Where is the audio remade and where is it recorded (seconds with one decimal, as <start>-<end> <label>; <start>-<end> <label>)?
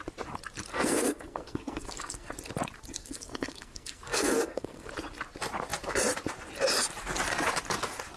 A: 0.0-0.7 recorded; 0.7-2.3 remade; 2.3-3.0 recorded; 3.0-4.9 remade; 4.9-8.2 recorded